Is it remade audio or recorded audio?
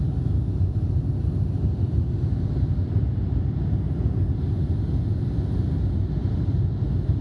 recorded